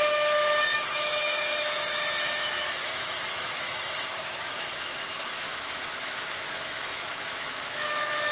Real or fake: fake